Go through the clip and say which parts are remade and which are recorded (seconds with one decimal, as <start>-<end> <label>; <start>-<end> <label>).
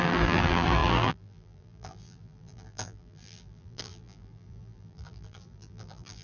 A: 0.0-6.2 remade